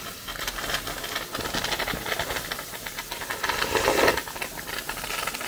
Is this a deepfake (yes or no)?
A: no